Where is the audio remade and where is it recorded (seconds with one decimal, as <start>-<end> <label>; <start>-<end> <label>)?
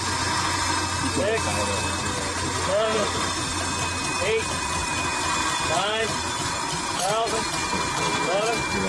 0.0-2.9 recorded; 2.9-3.4 remade; 3.4-8.9 recorded